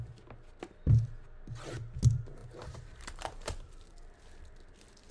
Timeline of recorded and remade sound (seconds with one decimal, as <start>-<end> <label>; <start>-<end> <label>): 0.0-2.4 recorded; 2.4-3.7 remade; 3.7-5.1 recorded